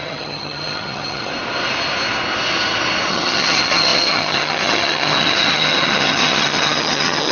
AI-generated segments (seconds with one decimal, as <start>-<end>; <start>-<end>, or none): 0.0-1.3; 3.1-7.3